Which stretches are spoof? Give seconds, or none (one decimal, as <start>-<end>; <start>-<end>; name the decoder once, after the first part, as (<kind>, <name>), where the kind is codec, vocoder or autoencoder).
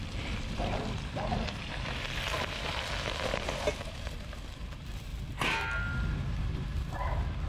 0.0-5.1 (vocoder, BigVGAN v2); 6.3-7.5